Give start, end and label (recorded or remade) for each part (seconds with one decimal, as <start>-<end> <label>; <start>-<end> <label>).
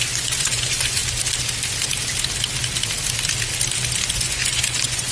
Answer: 0.0-1.0 remade; 1.0-4.1 recorded; 4.1-5.1 remade